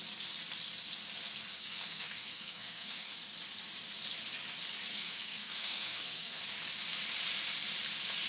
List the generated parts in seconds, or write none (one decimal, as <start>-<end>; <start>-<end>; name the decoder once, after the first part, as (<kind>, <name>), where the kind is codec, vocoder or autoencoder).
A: 1.5-3.1 (codec, SNAC); 4.9-6.4